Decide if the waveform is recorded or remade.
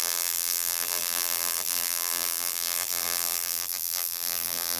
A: remade